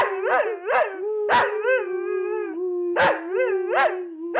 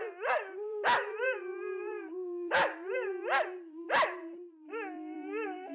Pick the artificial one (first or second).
second